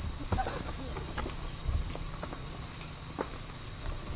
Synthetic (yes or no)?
no